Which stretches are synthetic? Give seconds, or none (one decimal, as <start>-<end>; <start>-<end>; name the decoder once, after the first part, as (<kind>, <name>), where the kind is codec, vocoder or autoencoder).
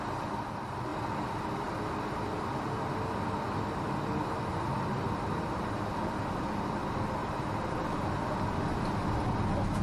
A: 7.2-7.9 (vocoder, BigVGAN v2)